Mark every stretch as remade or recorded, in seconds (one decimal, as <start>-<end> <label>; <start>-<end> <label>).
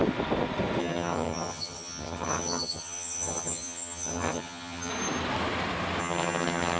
0.0-0.8 recorded; 0.8-4.9 remade; 4.9-6.0 recorded; 6.0-6.8 remade